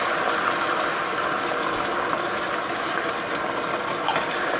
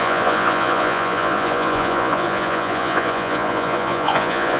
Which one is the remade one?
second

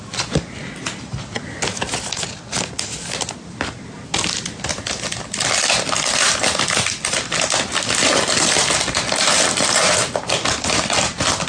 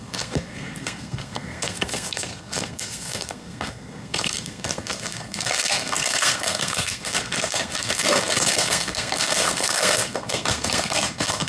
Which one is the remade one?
second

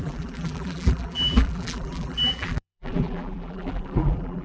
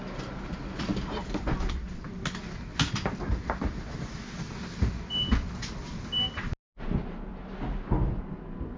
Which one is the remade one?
first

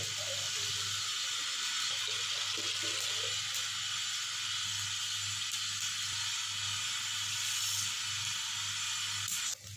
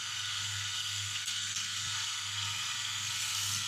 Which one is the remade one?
second